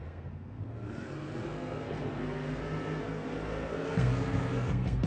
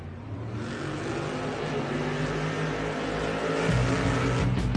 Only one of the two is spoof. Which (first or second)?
first